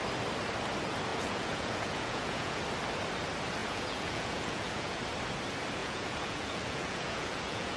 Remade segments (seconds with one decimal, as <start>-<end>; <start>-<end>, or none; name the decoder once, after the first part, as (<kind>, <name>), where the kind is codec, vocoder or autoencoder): 1.1-2.6 (vocoder, Vocos); 3.6-5.0; 5.8-7.8